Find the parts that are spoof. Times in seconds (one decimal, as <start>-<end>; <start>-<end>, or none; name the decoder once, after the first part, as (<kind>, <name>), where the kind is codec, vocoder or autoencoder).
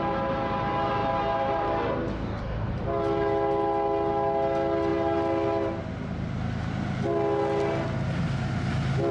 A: 2.1-2.7 (codec, DAC)